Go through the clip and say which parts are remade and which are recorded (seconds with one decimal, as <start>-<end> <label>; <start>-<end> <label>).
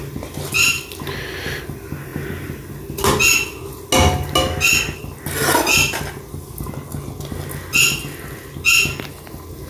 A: 0.0-9.7 recorded